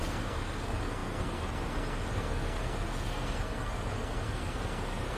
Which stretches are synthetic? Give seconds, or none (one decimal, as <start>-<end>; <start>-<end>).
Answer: 0.0-5.2